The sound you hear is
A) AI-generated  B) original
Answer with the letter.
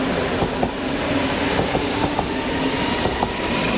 B